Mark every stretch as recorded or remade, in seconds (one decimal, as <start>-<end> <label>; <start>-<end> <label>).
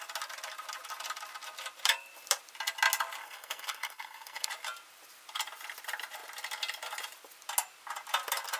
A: 0.0-3.2 recorded; 3.2-4.5 remade; 4.5-8.6 recorded